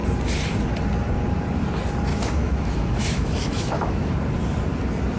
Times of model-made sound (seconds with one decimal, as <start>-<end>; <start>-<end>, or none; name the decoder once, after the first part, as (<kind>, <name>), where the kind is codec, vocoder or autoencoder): 2.1-4.1 (autoencoder, DAC-VAE)